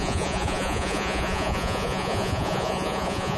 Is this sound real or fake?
fake